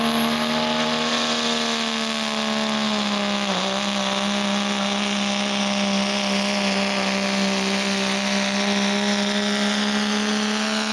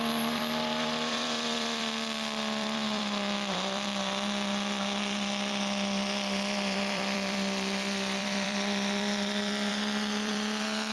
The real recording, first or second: first